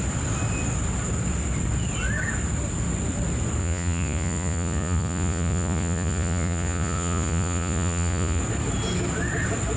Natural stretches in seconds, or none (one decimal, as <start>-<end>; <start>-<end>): 0.0-3.6; 8.4-9.8

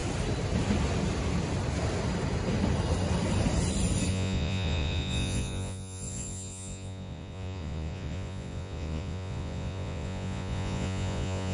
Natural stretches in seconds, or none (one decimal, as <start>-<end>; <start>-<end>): 0.0-4.1

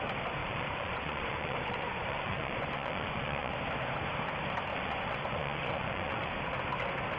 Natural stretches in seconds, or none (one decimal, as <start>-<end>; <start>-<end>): 0.0-0.4; 3.5-4.7; 6.3-7.2

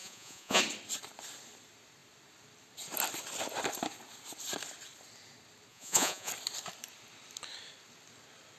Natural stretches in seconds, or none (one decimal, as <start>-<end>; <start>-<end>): 0.6-5.7; 6.3-8.6

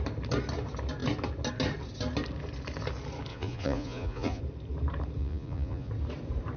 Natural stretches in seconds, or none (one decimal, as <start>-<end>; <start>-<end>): 0.0-3.3; 4.4-5.2; 5.9-6.6

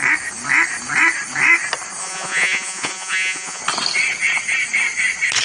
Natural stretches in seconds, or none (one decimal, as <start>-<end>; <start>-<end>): 0.0-2.0; 3.6-5.4

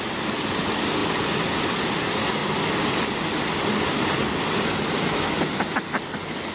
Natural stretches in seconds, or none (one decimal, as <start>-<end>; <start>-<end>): 0.0-6.5